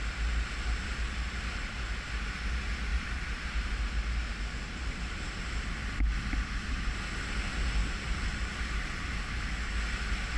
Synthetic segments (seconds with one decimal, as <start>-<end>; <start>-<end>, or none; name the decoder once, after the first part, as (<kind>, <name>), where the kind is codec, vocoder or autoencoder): 2.9-3.8 (vocoder, BigVGAN v2); 4.8-5.7; 7.8-9.2